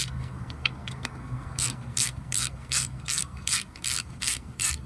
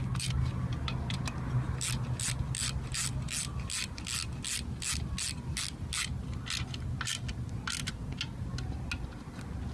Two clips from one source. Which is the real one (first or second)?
second